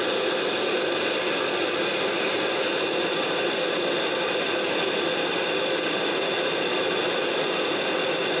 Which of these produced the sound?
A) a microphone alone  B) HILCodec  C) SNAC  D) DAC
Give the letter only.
A